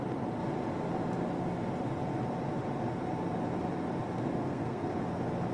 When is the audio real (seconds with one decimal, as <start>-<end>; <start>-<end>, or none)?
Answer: 0.0-4.4; 4.9-5.5